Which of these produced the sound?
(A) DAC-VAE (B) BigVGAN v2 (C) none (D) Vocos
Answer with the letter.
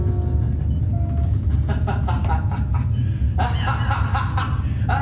C